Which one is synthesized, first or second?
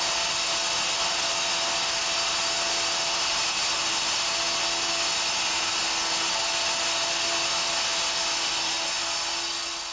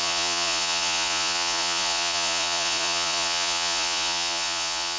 second